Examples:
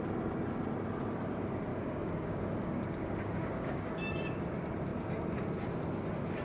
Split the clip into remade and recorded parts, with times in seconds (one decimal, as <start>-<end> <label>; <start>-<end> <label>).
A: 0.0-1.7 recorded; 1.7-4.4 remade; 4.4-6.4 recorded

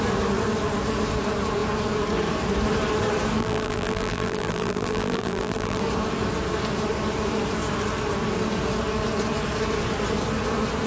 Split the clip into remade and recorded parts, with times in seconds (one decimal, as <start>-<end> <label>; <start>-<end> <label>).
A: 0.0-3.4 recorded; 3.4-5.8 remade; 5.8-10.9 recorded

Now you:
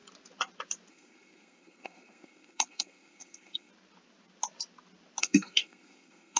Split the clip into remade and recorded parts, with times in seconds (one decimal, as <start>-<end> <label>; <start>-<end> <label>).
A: 0.0-0.9 recorded; 0.9-3.7 remade; 3.7-5.2 recorded; 5.2-6.4 remade